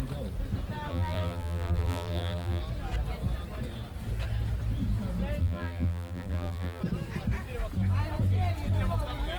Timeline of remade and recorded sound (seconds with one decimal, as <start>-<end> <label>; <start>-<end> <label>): 0.0-0.9 recorded; 0.9-2.6 remade; 2.6-5.4 recorded; 5.4-6.8 remade; 6.8-9.4 recorded